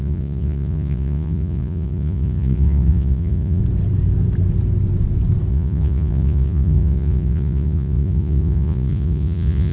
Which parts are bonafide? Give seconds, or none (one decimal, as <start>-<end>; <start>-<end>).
3.6-5.5